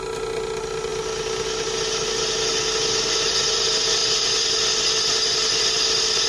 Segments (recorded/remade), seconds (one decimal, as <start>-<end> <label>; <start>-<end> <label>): 0.0-6.3 recorded